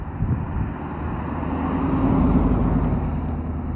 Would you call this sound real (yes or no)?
yes